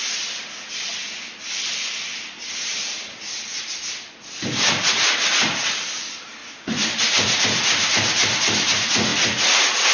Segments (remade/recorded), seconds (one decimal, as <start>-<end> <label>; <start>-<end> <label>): 0.0-6.4 recorded; 6.4-8.7 remade; 8.7-9.9 recorded

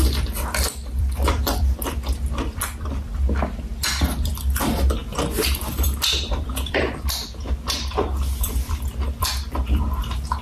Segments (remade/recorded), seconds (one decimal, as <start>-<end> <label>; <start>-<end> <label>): 0.0-10.4 remade

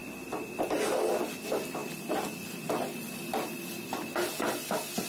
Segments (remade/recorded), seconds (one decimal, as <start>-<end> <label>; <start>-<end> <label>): 0.0-5.1 recorded

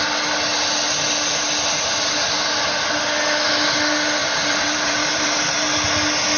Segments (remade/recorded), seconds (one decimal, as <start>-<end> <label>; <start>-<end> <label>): 0.0-4.2 recorded; 4.2-5.4 remade; 5.4-6.4 recorded

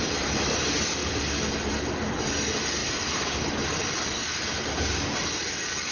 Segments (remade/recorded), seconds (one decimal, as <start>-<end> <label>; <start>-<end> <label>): 0.0-5.9 recorded

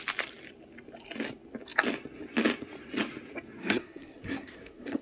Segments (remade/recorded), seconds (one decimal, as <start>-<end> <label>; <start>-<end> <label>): 0.0-3.6 recorded; 3.6-5.0 remade

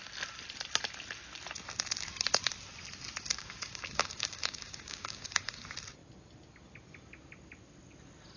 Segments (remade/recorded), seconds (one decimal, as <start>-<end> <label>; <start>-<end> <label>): 0.0-3.3 recorded; 3.3-5.6 remade; 5.6-8.4 recorded